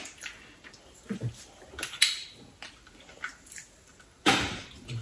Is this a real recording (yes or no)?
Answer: yes